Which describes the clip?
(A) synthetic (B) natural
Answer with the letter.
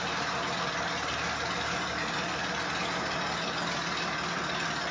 B